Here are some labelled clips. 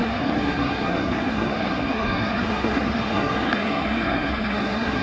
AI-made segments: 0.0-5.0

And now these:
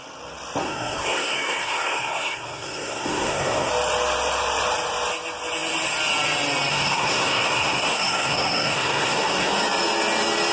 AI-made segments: 0.6-3.7; 6.7-9.5

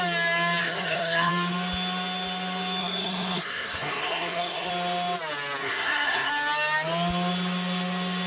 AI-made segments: 0.6-1.3; 2.8-4.7; 5.6-6.3

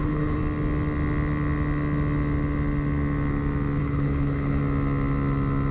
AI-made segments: 0.0-0.4; 3.8-4.6

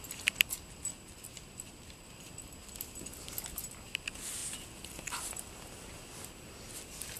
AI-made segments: none

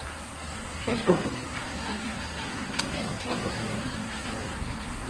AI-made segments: 0.0-5.1

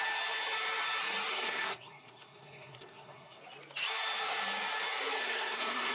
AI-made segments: 1.3-3.4; 5.2-5.9

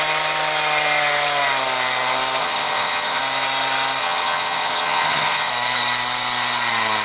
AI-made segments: 2.4-3.2; 4.0-5.5